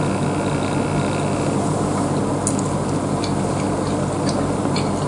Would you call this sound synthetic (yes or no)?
no